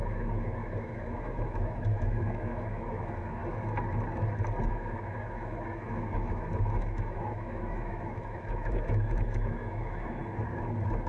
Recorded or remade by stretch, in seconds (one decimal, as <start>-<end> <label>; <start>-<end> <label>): 0.0-3.4 remade; 3.4-4.7 recorded; 4.7-10.2 remade; 10.2-11.1 recorded